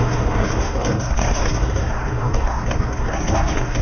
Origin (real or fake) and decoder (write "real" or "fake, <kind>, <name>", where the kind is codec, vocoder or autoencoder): fake, codec, SNAC